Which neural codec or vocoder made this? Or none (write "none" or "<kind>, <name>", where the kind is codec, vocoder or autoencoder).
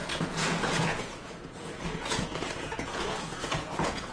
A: vocoder, Vocos